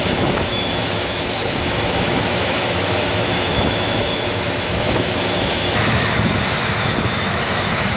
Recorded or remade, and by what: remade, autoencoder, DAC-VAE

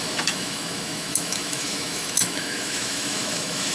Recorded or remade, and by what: remade, autoencoder, DAC-VAE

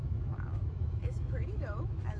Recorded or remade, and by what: remade, autoencoder, DAC-VAE